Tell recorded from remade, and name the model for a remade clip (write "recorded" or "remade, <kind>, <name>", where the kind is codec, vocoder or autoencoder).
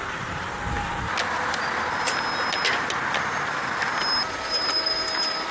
recorded